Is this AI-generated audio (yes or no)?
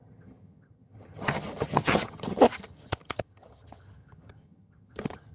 yes